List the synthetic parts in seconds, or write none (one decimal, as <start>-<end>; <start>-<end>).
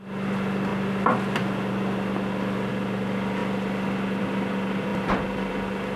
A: none